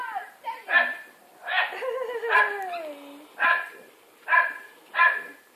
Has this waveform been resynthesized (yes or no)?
no